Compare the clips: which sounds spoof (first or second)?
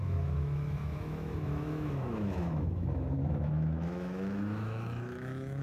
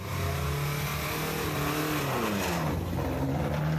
first